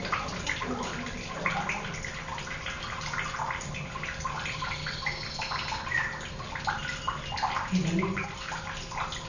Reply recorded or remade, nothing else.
recorded